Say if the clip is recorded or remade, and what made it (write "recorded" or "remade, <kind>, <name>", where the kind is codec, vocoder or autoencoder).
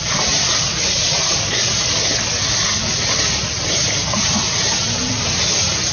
recorded